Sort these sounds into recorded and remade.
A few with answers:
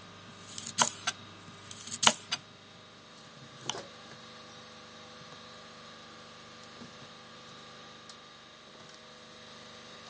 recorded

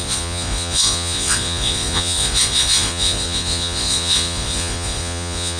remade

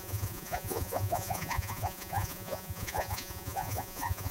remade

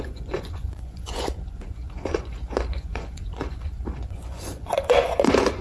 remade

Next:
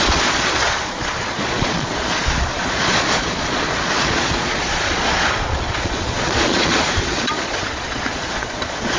remade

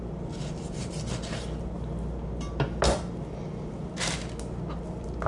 recorded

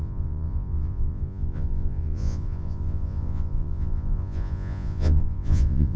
remade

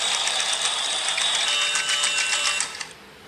recorded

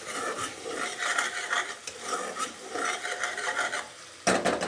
recorded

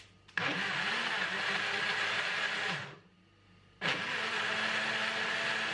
recorded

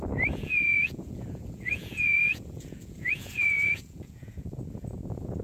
remade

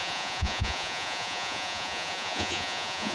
remade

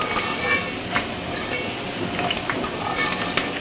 recorded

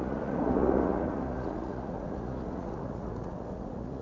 remade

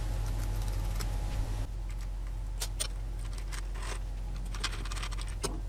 recorded